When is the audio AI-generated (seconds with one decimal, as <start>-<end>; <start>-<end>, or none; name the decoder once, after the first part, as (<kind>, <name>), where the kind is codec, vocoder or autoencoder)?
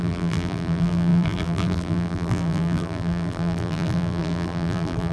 0.0-5.1 (vocoder, BigVGAN v2)